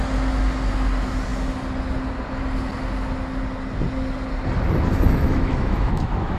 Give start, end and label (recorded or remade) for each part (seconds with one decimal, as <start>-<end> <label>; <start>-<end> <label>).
0.0-4.9 recorded; 4.9-6.4 remade